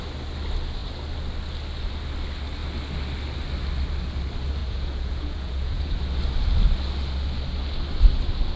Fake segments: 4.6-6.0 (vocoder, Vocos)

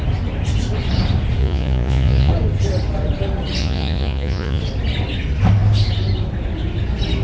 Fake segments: 1.4-2.3 (vocoder, Vocos); 3.6-4.6

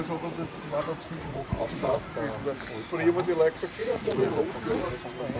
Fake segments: 1.2-2.0 (vocoder, Vocos); 3.8-4.9

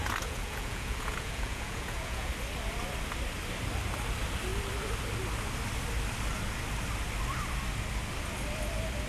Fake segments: 0.0-2.3 (vocoder, Vocos)

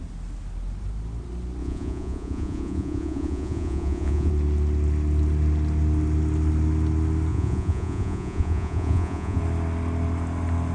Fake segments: 1.6-4.3 (vocoder, Vocos); 7.3-9.4

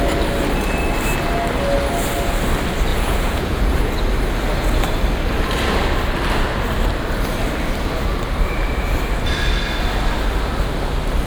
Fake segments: 2.9-3.9 (vocoder, Vocos)

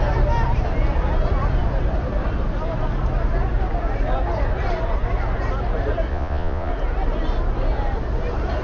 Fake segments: 6.1-6.7 (vocoder, Vocos)

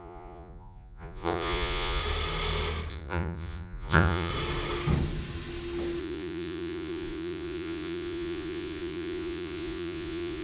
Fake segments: 0.0-2.0 (vocoder, Vocos); 2.9-4.3; 6.0-10.4